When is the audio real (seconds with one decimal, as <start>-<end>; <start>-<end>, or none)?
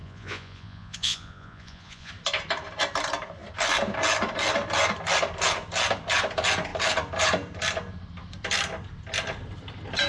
2.1-10.1